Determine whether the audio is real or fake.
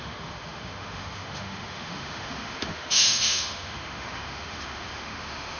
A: fake